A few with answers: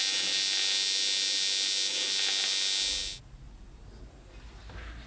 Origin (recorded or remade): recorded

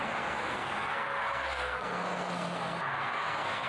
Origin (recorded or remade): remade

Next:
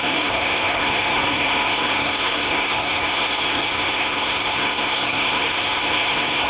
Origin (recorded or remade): remade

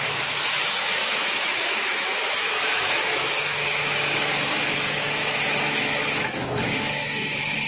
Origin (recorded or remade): remade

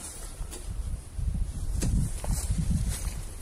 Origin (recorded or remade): remade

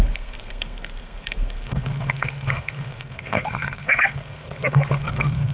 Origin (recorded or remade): remade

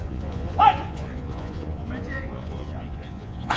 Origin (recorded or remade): remade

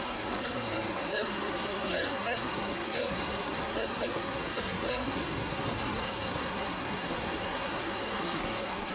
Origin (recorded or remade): remade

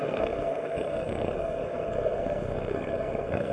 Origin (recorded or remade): remade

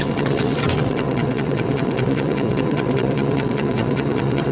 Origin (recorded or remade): remade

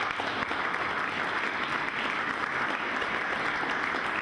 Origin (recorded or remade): recorded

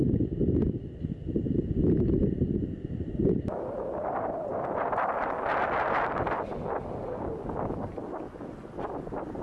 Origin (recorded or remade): recorded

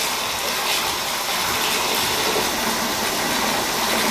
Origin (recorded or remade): recorded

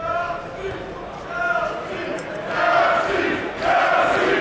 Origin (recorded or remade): recorded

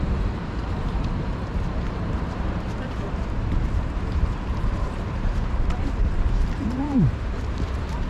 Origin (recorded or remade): remade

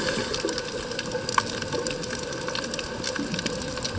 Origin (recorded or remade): recorded